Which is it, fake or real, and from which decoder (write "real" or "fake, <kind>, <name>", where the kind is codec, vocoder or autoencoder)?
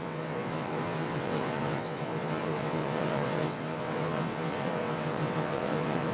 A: fake, vocoder, WaveNeXt